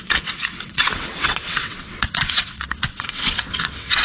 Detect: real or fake fake